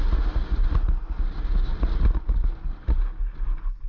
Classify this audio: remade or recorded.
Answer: recorded